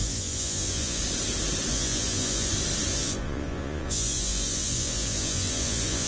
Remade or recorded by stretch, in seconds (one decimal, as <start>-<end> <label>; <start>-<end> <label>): 0.0-1.0 remade; 1.0-1.7 recorded; 1.7-2.5 remade; 2.5-2.9 recorded; 2.9-6.1 remade